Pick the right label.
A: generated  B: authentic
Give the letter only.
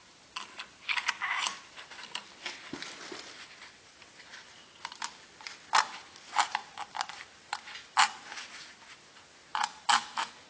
B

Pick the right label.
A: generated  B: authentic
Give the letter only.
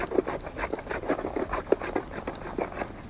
B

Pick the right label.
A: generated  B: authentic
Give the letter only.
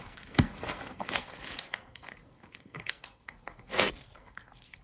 A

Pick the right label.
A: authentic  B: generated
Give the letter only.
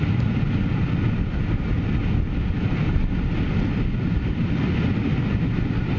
A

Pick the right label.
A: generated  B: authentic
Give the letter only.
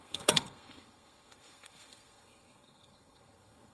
A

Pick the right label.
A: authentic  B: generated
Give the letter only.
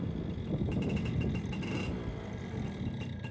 A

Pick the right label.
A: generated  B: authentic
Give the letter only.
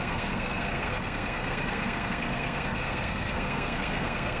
A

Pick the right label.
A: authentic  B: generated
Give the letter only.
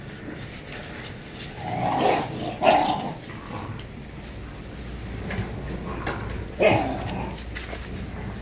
A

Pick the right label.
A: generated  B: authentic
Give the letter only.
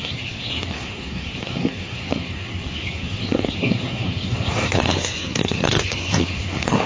A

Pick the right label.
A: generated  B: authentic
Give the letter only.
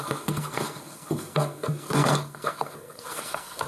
A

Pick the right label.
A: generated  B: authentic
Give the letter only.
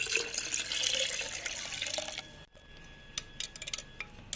B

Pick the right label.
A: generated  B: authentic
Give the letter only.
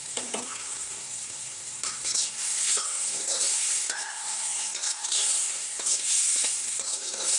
A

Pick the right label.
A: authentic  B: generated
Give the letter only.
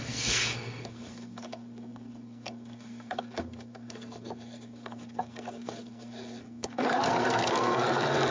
B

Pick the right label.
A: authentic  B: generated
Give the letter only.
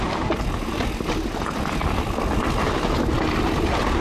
A